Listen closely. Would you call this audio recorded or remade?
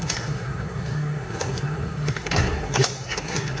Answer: remade